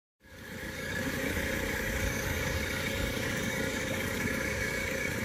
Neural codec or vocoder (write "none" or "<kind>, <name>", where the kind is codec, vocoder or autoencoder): codec, DAC